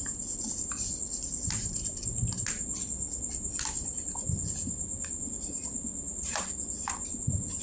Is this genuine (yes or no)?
yes